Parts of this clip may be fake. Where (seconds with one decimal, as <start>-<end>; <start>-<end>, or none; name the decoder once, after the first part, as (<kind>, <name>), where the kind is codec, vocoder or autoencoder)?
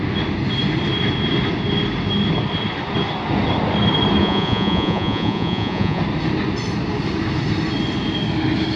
4.2-6.0 (vocoder, Vocos)